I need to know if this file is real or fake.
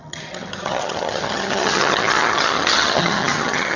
fake